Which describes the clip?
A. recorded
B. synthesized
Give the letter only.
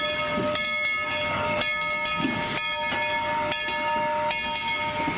A